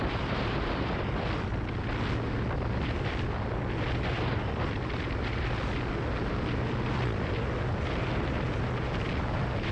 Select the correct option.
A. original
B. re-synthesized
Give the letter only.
A